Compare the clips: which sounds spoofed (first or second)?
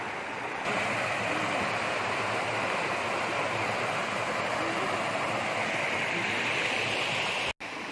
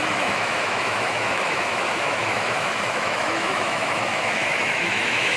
second